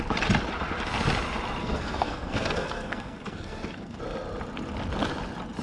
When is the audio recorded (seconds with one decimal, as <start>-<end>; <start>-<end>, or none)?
0.0-1.6; 4.0-5.6